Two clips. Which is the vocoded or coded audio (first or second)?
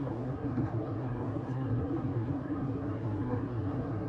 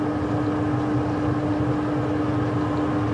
first